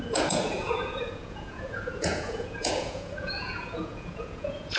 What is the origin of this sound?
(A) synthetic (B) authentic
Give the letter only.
A